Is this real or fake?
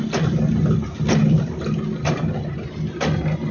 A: real